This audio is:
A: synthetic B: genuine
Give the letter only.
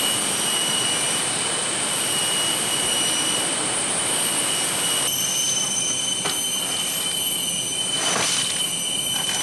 B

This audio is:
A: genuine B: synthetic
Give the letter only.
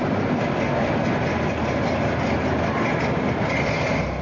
A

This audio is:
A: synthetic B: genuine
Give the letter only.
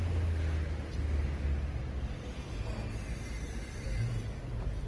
B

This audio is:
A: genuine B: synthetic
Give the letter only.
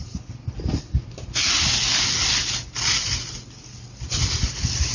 A